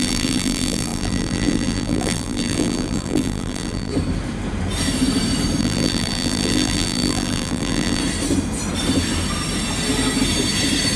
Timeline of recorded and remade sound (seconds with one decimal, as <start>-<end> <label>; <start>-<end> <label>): 0.0-3.9 remade; 3.9-5.6 recorded; 5.6-8.0 remade; 8.0-11.0 recorded